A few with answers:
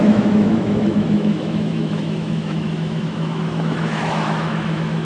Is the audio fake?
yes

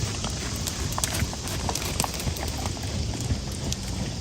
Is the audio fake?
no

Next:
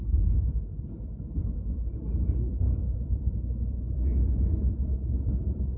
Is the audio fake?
yes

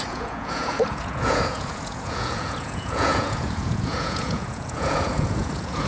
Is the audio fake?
yes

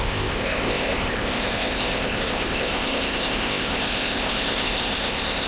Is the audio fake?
yes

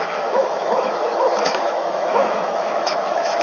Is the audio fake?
yes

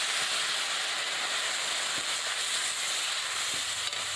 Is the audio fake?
no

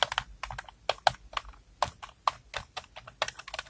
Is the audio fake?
no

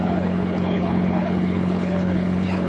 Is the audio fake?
yes